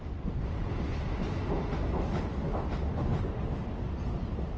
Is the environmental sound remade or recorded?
recorded